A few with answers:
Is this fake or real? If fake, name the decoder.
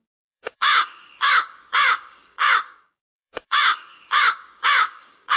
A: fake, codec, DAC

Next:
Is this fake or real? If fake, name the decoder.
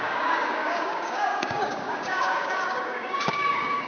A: fake, codec, DAC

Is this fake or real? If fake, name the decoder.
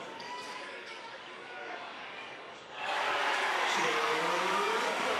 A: fake, codec, DAC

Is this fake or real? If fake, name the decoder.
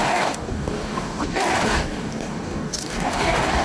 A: fake, codec, DAC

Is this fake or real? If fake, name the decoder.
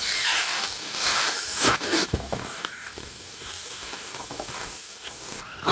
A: fake, codec, DAC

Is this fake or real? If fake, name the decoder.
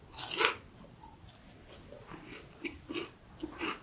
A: real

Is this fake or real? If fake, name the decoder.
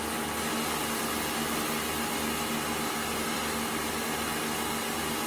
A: real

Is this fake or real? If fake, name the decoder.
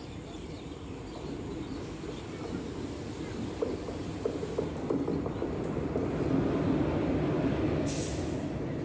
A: real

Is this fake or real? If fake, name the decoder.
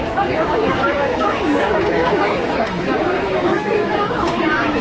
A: fake, codec, DAC